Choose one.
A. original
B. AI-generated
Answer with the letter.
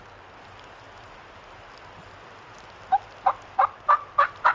A